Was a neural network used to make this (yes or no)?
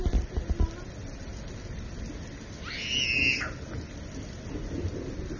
no